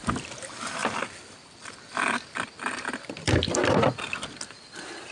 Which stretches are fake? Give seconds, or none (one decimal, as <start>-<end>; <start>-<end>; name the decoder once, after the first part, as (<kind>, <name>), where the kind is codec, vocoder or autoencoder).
0.8-3.9 (vocoder, BigVGAN v2)